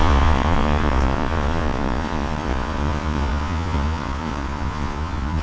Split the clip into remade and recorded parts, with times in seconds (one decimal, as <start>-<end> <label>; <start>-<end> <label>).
0.0-5.4 remade